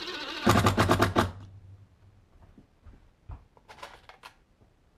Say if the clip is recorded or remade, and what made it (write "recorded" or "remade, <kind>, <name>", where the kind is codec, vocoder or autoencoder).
recorded